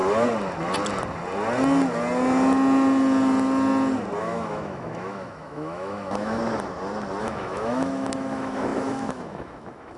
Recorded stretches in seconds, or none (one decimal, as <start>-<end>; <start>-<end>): 0.0-4.2; 6.4-7.2